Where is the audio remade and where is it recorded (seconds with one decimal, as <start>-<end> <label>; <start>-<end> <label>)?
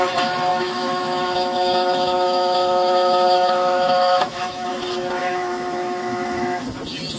0.0-0.5 recorded; 0.5-4.7 remade; 4.7-5.2 recorded; 5.2-6.6 remade; 6.6-7.2 recorded